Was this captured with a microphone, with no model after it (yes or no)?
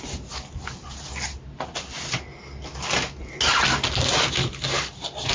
yes